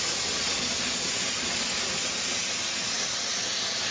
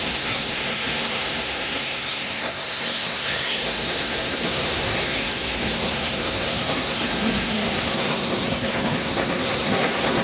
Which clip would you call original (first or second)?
first